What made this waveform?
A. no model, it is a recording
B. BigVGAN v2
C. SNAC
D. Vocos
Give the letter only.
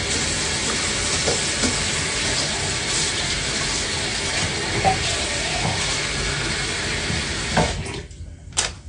A